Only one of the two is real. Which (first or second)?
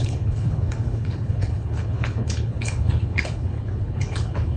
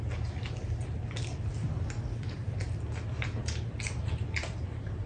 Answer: second